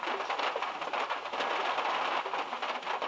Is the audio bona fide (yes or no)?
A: yes